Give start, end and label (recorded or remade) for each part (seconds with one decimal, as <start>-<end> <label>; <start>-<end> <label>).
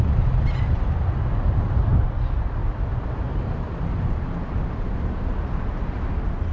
0.0-6.5 recorded